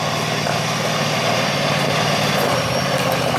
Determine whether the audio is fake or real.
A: real